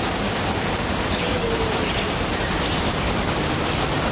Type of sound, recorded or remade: recorded